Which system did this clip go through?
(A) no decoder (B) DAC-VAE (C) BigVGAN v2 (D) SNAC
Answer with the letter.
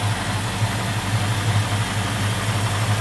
A